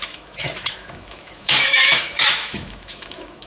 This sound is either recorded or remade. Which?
remade